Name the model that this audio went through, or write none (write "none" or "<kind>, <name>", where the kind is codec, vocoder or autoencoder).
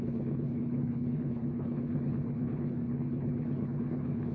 codec, HILCodec